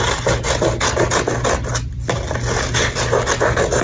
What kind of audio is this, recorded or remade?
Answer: recorded